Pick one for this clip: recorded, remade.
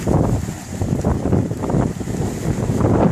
recorded